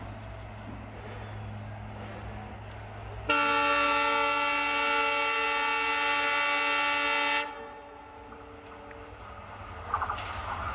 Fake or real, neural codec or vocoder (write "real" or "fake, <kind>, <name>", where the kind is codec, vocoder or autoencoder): real